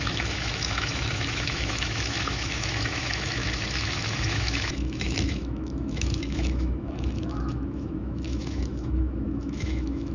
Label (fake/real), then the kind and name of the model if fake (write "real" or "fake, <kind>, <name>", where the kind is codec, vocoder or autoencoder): fake, autoencoder, DAC-VAE